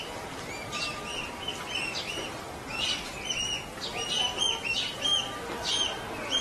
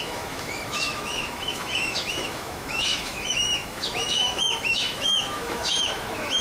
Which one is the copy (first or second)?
second